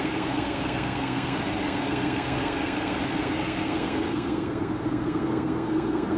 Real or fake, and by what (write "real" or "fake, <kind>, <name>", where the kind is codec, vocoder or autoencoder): fake, codec, SNAC